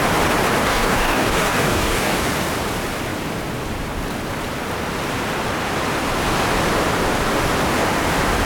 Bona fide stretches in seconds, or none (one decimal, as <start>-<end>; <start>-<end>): 0.0-0.6; 2.3-8.4